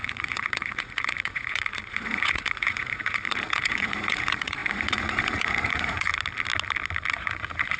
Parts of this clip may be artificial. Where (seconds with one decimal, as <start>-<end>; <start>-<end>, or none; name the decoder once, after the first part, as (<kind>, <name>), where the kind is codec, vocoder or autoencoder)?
0.0-6.1 (vocoder, Vocos); 7.1-7.8